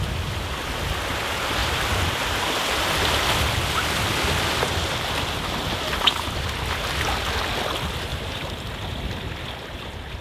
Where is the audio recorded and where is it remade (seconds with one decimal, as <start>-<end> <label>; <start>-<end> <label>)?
0.0-1.6 recorded; 1.6-2.5 remade; 2.5-8.1 recorded; 8.1-10.2 remade